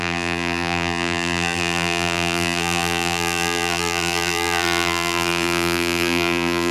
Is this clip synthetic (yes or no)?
yes